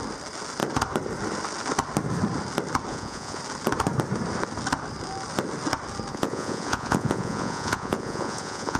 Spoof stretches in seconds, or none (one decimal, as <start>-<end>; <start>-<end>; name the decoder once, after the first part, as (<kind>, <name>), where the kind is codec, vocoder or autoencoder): 2.9-3.4 (vocoder, Vocos); 6.1-8.8